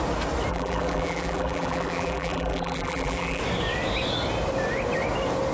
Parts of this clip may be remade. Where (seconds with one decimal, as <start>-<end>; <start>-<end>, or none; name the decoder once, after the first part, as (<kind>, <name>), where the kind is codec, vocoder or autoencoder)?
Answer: 0.5-3.4 (vocoder, BigVGAN v2)